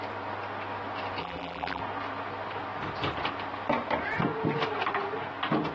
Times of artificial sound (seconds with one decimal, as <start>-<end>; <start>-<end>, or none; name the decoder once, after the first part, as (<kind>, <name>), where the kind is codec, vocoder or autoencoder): 1.2-1.8 (vocoder, BigVGAN v2)